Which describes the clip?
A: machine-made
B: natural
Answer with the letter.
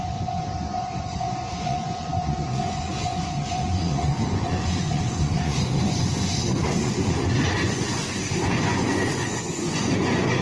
A